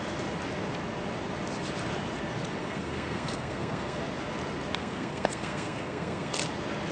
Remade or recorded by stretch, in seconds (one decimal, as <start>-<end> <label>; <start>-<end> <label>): 0.0-2.6 recorded; 2.6-4.0 remade; 4.0-4.8 recorded; 4.8-6.3 remade; 6.3-6.9 recorded